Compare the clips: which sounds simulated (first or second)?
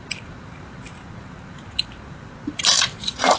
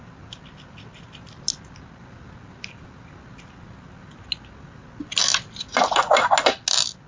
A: first